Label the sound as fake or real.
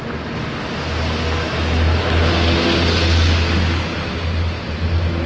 real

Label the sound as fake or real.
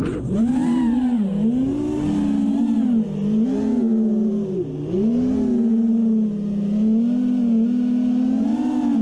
real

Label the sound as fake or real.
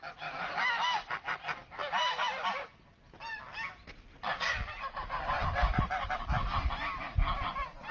fake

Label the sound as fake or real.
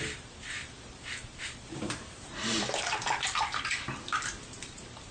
fake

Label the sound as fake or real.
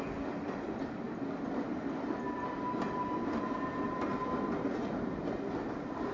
real